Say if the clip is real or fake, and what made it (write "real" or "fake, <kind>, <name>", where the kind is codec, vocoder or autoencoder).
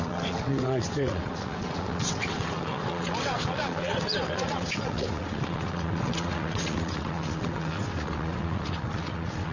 fake, vocoder, WaveNeXt